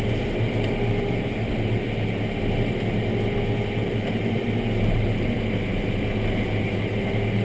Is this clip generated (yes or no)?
no